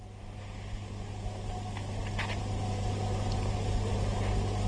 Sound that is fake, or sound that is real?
real